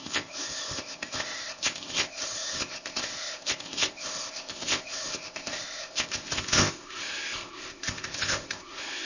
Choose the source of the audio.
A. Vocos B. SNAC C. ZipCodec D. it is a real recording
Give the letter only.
C